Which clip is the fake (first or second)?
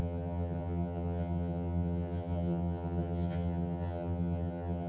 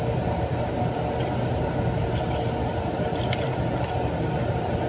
first